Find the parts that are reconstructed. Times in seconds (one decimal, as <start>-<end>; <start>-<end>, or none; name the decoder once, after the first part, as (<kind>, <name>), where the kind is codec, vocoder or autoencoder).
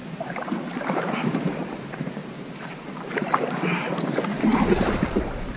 0.0-5.6 (vocoder, BigVGAN v2)